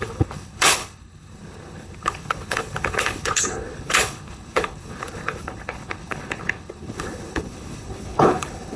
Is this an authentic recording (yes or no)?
no